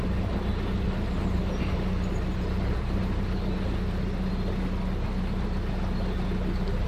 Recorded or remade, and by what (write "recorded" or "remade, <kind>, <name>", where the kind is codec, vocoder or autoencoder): recorded